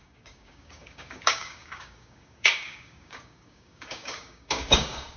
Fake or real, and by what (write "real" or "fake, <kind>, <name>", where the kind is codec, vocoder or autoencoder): fake, codec, DAC